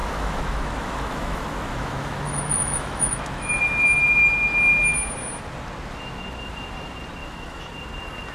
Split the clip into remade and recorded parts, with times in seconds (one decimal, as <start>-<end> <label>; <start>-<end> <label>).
0.0-3.6 remade; 3.6-7.2 recorded; 7.2-7.7 remade; 7.7-8.3 recorded